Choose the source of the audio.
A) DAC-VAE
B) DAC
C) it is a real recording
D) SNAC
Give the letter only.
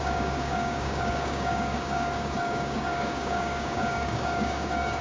B